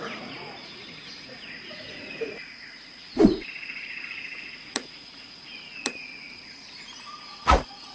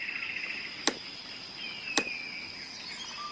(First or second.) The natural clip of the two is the second